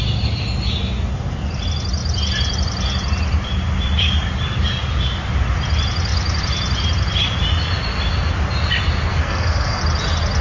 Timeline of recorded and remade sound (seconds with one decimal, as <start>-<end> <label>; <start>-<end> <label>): 0.0-9.1 recorded; 9.1-9.8 remade; 9.8-10.4 recorded